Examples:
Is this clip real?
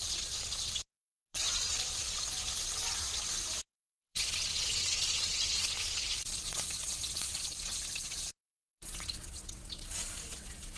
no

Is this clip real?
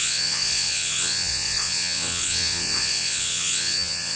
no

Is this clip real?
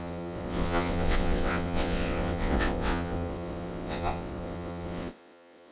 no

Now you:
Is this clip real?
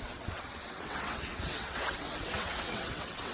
no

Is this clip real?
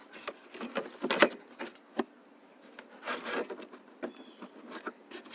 yes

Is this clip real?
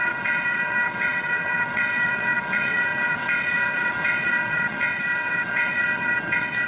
no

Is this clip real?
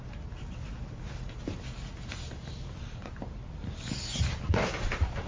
yes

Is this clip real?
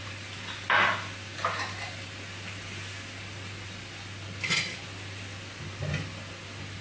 yes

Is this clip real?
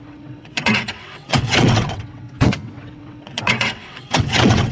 no